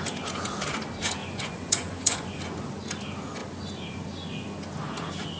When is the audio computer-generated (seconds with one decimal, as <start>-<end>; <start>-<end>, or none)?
1.2-2.4